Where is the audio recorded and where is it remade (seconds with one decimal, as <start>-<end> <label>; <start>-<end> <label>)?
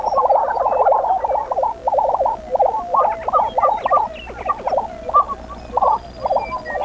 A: 0.0-0.6 remade; 0.6-1.8 recorded; 1.8-4.5 remade; 4.5-6.8 recorded